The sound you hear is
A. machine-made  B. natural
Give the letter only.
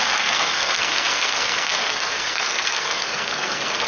A